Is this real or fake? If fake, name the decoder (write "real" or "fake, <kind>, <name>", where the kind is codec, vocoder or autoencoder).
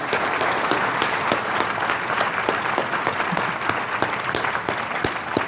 real